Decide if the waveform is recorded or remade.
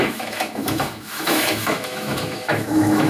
remade